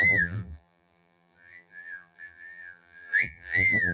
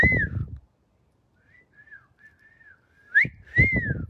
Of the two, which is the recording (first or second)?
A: second